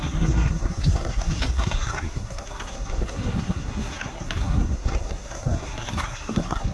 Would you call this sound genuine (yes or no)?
no